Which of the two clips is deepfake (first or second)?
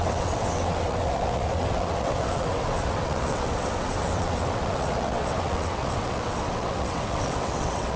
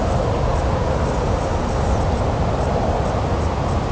first